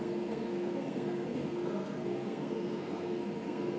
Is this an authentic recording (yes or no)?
no